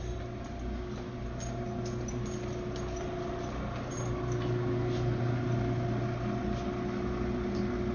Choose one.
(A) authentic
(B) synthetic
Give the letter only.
A